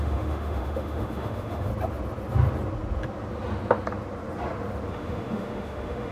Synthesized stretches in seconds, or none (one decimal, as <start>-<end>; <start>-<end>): 0.0-1.7; 4.9-6.1